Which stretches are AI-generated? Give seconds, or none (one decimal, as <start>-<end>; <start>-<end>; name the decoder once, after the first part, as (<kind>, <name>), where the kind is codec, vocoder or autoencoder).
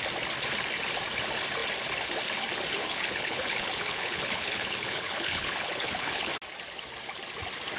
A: 2.8-6.3 (codec, HILCodec)